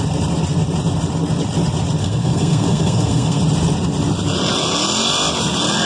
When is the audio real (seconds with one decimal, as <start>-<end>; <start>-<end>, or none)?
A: 0.0-2.0; 3.4-5.9